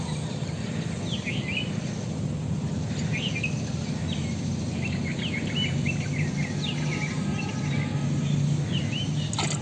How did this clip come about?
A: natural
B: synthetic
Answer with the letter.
A